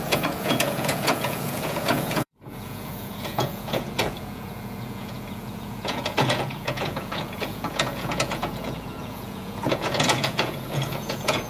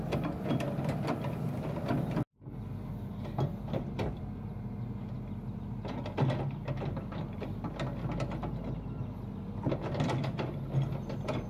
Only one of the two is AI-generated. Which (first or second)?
first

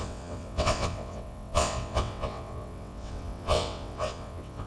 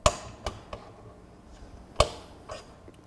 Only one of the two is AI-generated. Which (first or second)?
first